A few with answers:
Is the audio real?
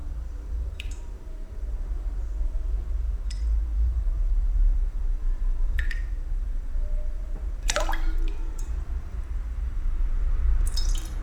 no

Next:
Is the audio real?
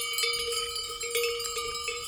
yes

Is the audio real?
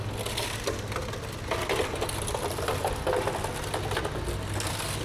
yes